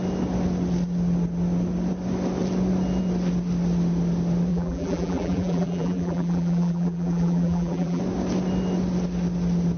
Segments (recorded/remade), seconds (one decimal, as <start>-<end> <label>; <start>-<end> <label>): 0.0-4.5 recorded; 4.5-8.0 remade; 8.0-9.8 recorded